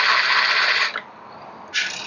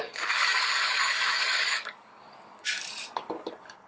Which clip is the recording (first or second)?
first